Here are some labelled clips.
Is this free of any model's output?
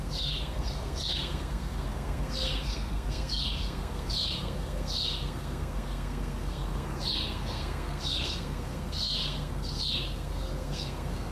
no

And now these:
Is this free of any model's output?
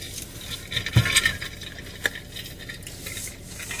yes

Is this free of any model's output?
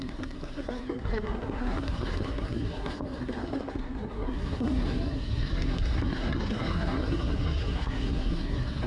no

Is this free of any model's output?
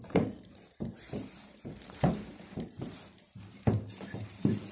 no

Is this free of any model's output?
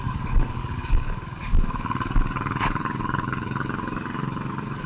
no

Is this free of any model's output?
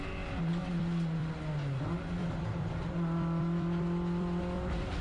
yes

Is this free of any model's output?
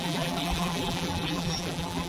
no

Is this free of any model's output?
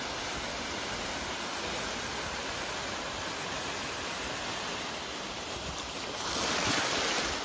yes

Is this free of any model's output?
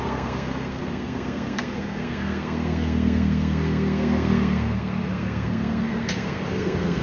no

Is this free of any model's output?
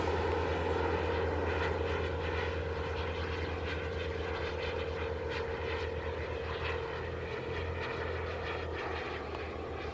yes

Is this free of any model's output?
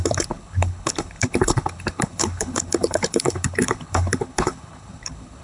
no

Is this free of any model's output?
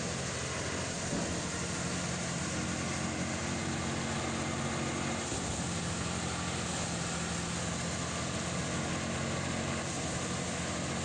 yes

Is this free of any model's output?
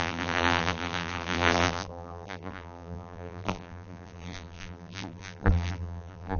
no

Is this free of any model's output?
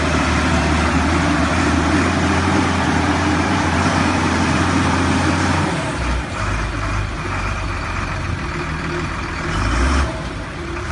no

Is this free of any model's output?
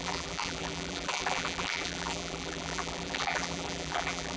no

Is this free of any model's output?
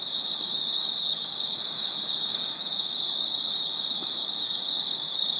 no